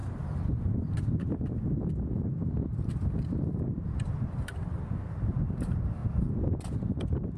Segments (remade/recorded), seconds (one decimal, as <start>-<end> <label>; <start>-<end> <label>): 0.0-2.4 remade; 2.4-3.7 recorded; 3.7-6.0 remade; 6.0-6.9 recorded; 6.9-7.4 remade